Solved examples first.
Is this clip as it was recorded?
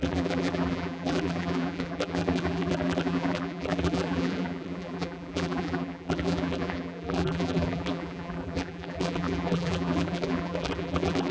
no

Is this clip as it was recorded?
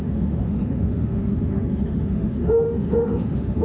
no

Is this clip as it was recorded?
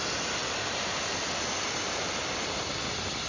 yes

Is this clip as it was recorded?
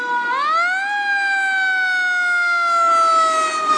yes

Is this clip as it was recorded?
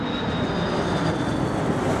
yes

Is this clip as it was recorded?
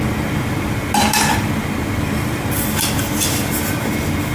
yes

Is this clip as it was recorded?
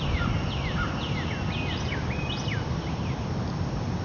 yes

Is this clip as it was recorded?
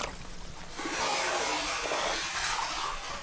yes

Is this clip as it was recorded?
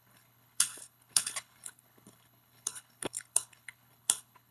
no